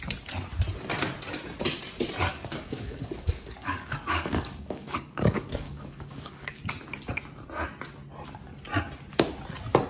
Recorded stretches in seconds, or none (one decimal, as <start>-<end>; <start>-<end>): 0.0-2.3; 6.6-9.9